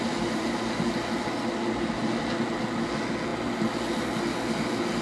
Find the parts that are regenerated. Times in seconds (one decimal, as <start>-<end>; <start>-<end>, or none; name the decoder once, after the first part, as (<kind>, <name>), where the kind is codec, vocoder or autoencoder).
none